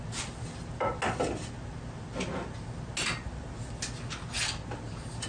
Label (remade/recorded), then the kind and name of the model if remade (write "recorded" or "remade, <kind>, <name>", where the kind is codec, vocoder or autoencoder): recorded